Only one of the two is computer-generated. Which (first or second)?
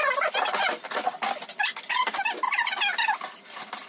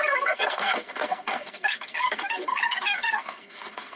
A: second